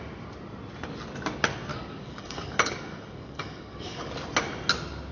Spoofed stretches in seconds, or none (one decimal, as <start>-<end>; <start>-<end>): 1.7-4.1